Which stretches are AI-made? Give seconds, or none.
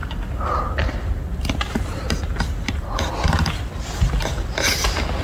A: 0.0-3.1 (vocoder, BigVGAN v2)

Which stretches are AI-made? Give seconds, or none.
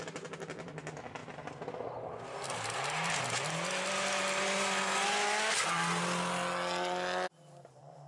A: none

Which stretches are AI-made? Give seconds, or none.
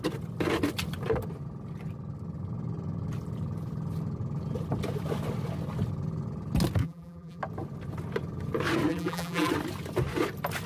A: 6.8-7.4 (vocoder, BigVGAN v2); 8.9-9.5